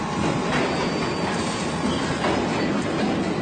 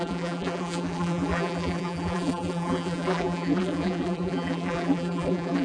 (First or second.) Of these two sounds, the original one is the first